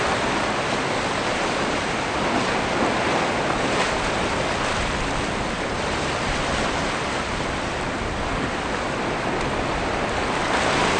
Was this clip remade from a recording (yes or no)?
no